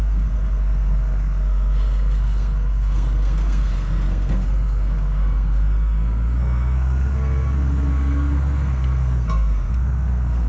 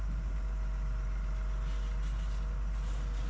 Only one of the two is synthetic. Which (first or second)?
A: first